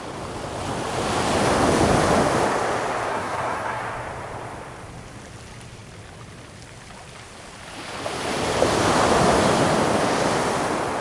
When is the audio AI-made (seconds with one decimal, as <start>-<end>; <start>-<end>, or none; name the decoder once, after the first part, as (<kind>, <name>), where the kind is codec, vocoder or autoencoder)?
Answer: 3.1-3.8 (codec, SNAC)